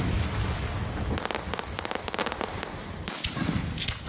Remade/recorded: recorded